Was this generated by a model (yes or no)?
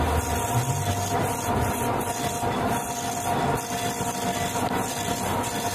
no